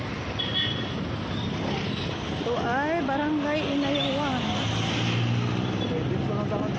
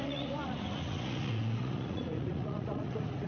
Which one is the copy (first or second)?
second